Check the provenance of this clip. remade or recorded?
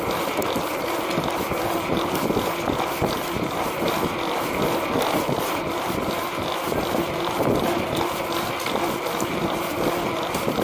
recorded